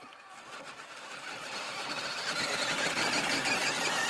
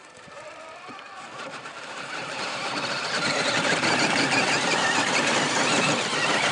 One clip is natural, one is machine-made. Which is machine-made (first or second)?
second